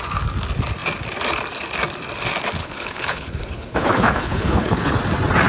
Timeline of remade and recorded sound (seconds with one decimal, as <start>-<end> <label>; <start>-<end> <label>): 0.0-2.6 recorded; 2.6-4.9 remade; 4.9-5.5 recorded